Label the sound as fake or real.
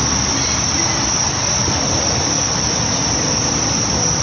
real